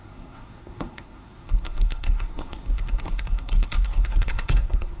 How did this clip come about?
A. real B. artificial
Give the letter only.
B